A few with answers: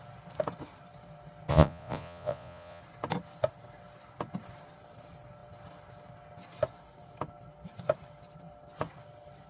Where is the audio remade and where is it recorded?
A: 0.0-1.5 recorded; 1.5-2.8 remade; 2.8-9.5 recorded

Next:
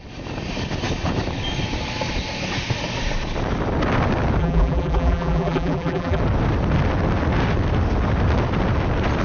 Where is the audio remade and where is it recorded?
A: 0.0-4.4 recorded; 4.4-6.2 remade; 6.2-9.2 recorded

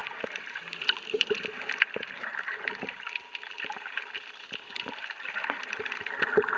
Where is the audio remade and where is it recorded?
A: 0.0-6.6 recorded

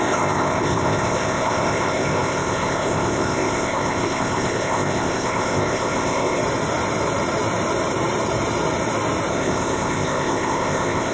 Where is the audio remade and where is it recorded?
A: 0.0-6.4 remade; 6.4-9.3 recorded; 9.3-11.1 remade

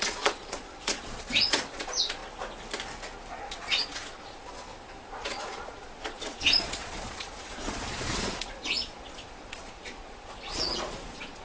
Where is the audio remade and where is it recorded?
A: 0.0-2.2 remade; 2.2-3.3 recorded; 3.3-11.4 remade